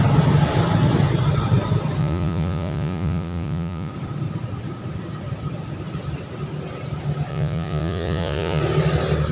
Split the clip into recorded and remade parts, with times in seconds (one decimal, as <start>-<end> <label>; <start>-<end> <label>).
0.0-2.0 recorded; 2.0-3.9 remade; 3.9-7.3 recorded; 7.3-8.6 remade; 8.6-9.3 recorded